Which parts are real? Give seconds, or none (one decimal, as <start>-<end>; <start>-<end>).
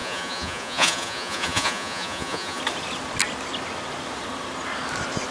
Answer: 2.6-5.3